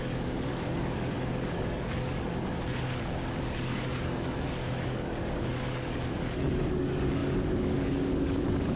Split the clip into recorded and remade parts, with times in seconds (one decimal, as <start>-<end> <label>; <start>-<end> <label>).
0.0-2.3 remade; 2.3-3.4 recorded; 3.4-8.8 remade